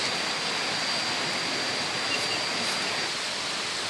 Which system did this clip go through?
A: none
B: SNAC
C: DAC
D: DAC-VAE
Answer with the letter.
A